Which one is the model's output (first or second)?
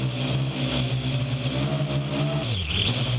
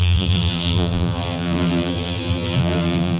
second